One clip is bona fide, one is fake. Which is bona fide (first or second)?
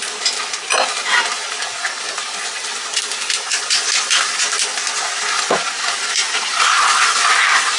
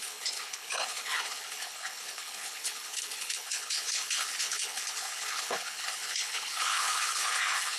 first